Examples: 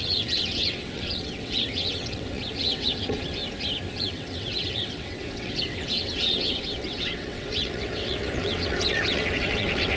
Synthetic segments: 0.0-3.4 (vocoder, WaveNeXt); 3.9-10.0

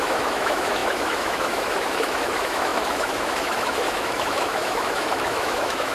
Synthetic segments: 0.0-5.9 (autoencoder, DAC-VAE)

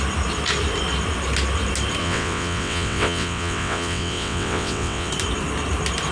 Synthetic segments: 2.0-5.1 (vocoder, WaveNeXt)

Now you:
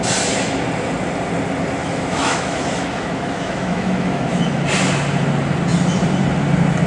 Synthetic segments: 1.8-4.4 (autoencoder, DAC-VAE)

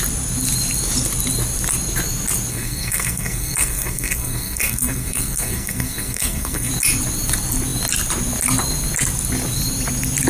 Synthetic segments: 2.5-6.7 (codec, SNAC)

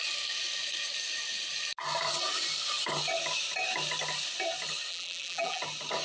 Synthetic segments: 4.9-5.6 (vocoder, BigVGAN v2)

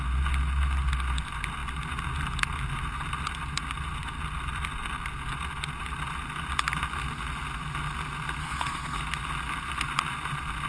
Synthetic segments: 8.4-9.0 (codec, SNAC)

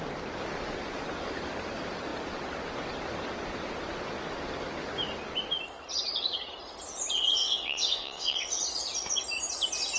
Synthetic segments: 7.4-8.5 (vocoder, WaveNeXt)